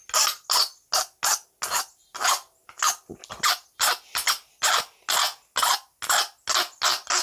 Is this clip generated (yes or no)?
no